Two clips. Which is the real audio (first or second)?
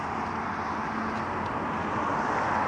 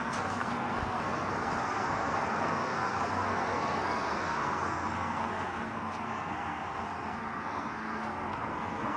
first